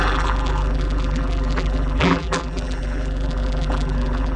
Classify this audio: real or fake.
fake